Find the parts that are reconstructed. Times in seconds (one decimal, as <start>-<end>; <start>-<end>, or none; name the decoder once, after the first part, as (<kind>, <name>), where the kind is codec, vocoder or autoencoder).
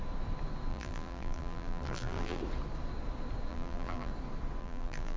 0.7-2.4 (vocoder, BigVGAN v2); 3.5-4.1; 4.6-5.2